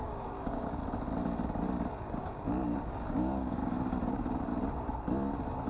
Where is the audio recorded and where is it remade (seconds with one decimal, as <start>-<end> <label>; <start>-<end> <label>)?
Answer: 0.0-0.8 remade; 0.8-2.0 recorded; 2.0-3.6 remade; 3.6-4.1 recorded; 4.1-4.5 remade; 4.5-5.7 recorded